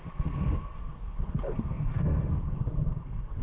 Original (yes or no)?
no